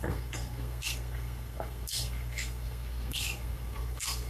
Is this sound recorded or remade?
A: remade